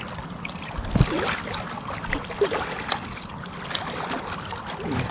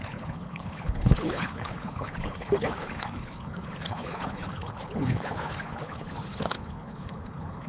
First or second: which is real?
first